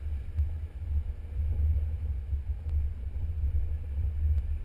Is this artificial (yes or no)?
no